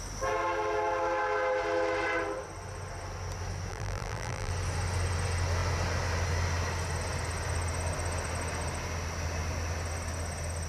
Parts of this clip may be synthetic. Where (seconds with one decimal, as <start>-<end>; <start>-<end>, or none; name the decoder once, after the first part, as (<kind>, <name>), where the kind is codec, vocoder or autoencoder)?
3.7-4.5 (vocoder, BigVGAN v2)